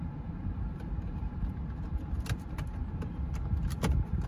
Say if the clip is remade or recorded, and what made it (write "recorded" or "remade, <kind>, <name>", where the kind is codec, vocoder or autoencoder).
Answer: recorded